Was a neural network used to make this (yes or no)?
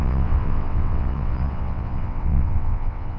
yes